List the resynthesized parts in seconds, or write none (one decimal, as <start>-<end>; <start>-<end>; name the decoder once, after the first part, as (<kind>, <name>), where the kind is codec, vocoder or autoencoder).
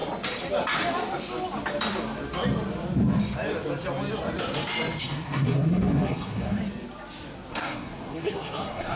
5.0-6.6 (codec, SNAC); 7.5-9.0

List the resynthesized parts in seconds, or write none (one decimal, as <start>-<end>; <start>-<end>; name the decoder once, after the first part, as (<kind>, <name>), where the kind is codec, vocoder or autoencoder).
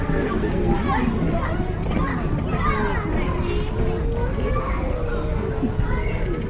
0.0-0.7 (codec, SNAC); 4.6-5.1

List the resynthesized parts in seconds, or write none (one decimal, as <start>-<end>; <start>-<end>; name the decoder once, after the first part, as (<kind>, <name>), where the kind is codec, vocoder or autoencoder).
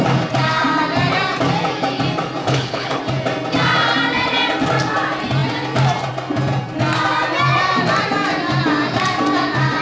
2.4-3.0 (codec, HILCodec)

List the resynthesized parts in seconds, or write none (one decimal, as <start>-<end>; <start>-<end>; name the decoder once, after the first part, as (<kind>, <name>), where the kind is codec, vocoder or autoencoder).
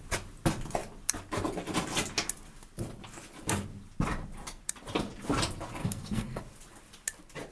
5.8-6.4 (codec, SNAC)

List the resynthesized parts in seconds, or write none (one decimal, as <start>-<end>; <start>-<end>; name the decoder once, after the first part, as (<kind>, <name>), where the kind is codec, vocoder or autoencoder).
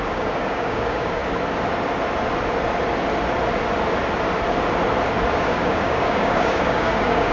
0.0-1.2 (codec, DAC); 5.3-7.3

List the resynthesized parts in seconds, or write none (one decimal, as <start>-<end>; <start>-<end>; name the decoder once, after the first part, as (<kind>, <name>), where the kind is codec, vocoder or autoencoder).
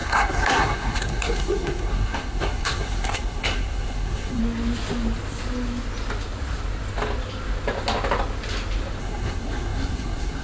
0.0-4.4 (codec, SNAC); 9.0-10.4